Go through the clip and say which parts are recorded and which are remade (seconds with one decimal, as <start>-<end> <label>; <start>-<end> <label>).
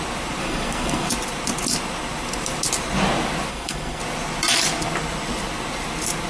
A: 0.0-0.4 recorded; 0.4-1.1 remade; 1.1-3.5 recorded; 3.5-4.0 remade; 4.0-6.3 recorded